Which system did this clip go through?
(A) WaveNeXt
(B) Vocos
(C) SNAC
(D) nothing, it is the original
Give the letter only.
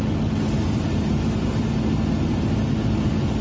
D